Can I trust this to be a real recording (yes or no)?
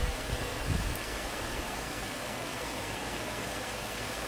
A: no